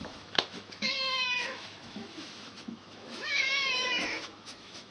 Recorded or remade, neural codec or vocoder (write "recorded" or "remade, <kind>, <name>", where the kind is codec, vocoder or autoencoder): remade, autoencoder, DAC-VAE